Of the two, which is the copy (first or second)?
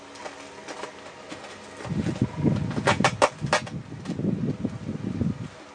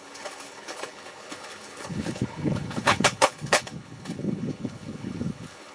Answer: second